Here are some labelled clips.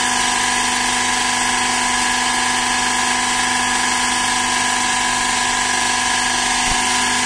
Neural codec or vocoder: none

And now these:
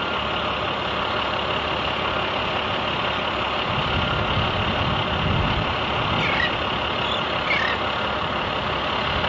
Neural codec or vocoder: none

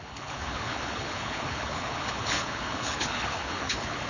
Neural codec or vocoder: codec, HILCodec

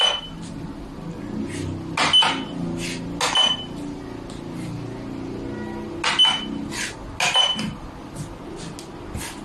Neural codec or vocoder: none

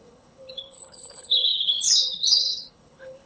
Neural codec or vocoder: codec, HILCodec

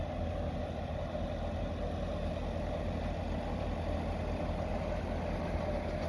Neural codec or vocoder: none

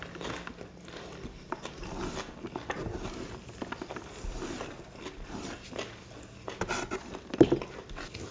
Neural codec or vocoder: none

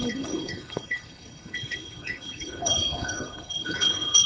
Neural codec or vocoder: codec, HILCodec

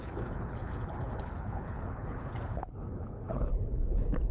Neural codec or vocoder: codec, HILCodec